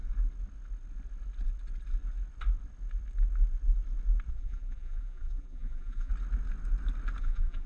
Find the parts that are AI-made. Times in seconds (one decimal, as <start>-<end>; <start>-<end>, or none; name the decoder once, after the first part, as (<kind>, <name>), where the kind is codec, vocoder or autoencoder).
4.3-6.1 (vocoder, BigVGAN v2); 7.2-7.7